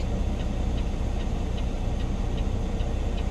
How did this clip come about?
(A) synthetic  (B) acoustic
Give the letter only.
B